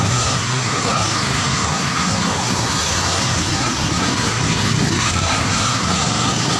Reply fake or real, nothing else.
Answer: fake